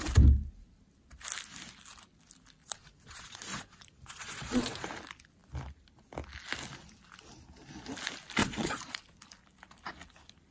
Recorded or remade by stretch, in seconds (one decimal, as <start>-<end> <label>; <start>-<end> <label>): 0.0-2.6 recorded; 2.6-4.9 remade; 4.9-8.4 recorded; 8.4-9.0 remade; 9.0-10.5 recorded